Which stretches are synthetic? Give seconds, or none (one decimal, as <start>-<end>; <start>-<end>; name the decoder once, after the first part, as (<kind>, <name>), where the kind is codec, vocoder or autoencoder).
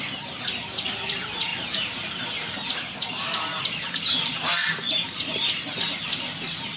1.5-2.2 (vocoder, BigVGAN v2); 3.2-5.1